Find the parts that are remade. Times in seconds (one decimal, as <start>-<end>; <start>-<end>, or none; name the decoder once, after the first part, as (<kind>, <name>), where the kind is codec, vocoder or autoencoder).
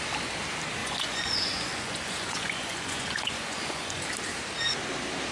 0.8-4.0 (vocoder, Vocos)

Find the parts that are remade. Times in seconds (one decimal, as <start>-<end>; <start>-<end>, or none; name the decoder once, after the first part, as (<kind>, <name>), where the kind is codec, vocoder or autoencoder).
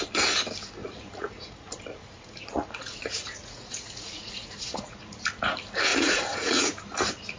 0.8-5.2 (vocoder, Vocos); 5.9-6.8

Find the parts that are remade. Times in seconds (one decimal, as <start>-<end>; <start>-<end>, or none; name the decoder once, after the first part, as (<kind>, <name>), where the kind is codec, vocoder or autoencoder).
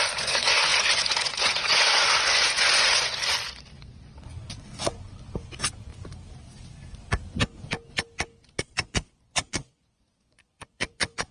0.0-5.9 (vocoder, Vocos); 8.6-11.3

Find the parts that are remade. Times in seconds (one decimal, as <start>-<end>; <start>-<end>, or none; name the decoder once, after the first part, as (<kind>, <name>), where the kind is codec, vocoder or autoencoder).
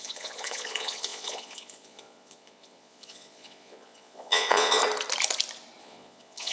0.0-4.8 (vocoder, Vocos); 5.8-6.5